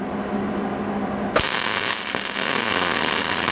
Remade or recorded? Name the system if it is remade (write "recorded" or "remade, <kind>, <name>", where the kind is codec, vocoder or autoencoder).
recorded